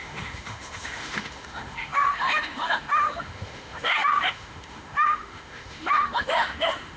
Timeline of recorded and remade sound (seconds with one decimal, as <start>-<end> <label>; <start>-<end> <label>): 0.0-7.0 remade